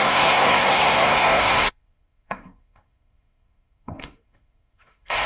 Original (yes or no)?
no